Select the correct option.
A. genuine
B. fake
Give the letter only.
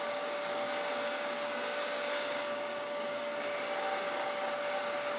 B